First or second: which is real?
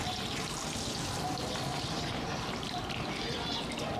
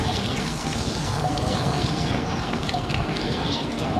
first